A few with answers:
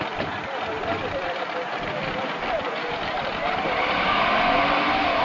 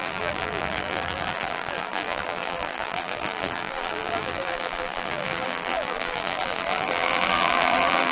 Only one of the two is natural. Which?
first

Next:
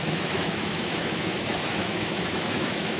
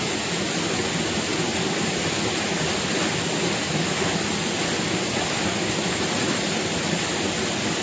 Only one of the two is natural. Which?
second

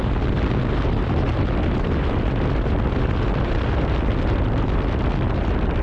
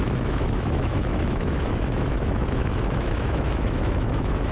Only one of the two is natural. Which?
first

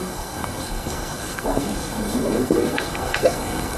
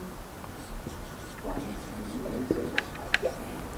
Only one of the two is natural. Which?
second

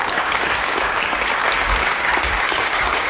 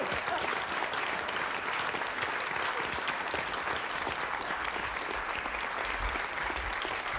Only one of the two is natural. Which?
second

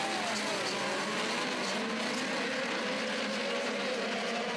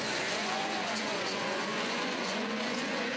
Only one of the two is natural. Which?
first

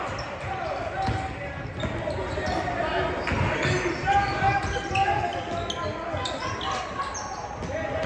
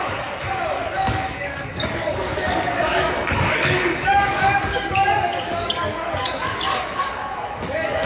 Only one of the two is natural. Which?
first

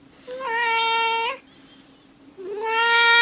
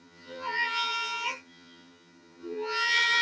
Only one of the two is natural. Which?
first